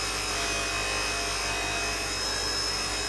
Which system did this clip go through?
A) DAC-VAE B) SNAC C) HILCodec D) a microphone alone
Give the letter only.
D